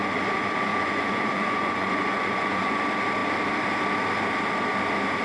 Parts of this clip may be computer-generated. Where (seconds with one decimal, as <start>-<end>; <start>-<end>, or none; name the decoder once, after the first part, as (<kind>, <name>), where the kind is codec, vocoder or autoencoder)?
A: 0.7-2.8 (vocoder, Vocos)